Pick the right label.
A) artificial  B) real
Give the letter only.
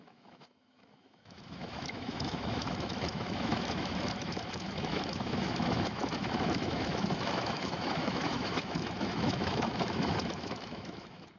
A